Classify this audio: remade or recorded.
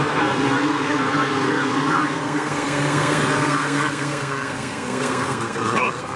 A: remade